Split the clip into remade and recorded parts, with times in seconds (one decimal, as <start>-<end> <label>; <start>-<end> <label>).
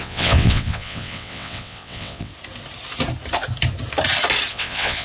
0.0-2.3 remade; 2.3-4.5 recorded; 4.5-5.0 remade